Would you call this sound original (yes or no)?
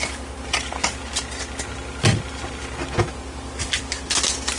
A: yes